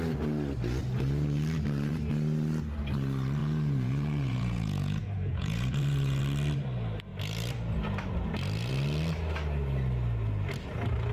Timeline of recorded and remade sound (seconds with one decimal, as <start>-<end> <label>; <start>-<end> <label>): 0.0-3.4 recorded; 3.4-6.2 remade; 6.2-11.1 recorded